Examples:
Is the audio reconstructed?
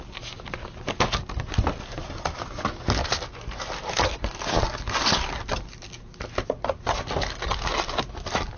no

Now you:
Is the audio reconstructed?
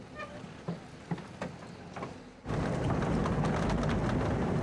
no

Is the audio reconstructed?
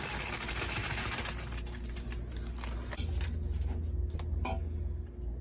no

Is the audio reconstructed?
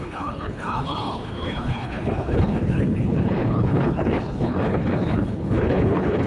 yes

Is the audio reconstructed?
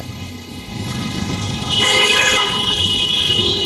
yes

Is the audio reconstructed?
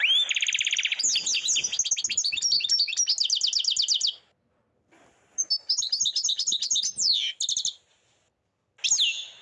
no